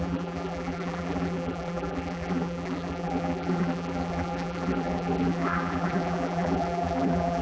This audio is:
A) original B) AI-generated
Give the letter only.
B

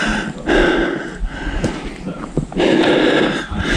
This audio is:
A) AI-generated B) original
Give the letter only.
B